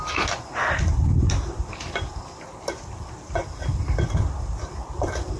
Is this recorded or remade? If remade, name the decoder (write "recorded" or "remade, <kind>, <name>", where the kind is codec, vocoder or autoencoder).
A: remade, vocoder, BigVGAN v2